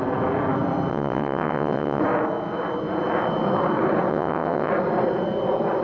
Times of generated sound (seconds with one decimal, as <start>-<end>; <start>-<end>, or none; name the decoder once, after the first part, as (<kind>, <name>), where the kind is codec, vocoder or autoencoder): 0.9-2.0 (vocoder, WaveNeXt); 4.1-4.7